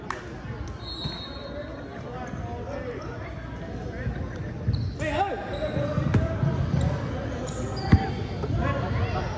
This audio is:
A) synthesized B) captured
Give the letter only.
B